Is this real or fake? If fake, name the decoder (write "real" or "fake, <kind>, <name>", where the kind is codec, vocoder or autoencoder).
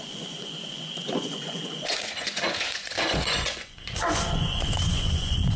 fake, vocoder, Vocos